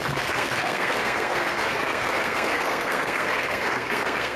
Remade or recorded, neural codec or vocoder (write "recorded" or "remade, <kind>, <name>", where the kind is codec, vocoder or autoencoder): remade, codec, SNAC